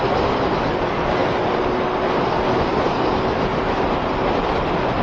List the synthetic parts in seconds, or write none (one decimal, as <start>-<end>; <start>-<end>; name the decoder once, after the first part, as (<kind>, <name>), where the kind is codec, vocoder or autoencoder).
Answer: none